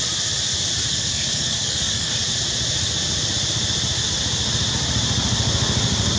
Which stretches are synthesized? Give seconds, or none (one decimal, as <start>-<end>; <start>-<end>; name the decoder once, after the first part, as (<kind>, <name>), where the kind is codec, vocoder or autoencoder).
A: 0.9-2.1 (codec, DAC)